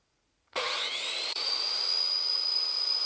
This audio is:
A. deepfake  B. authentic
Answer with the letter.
A